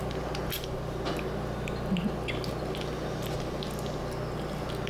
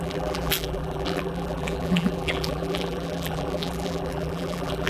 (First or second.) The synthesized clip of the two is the second